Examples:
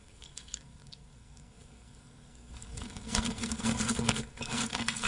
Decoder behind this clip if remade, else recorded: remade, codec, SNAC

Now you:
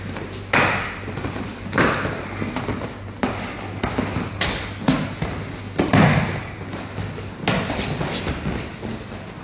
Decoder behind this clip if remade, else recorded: recorded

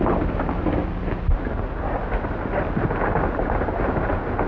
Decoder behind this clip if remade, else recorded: recorded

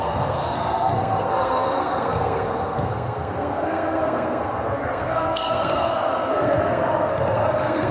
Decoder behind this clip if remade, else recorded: remade, codec, SNAC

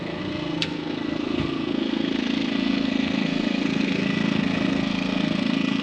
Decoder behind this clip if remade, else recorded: remade, codec, SNAC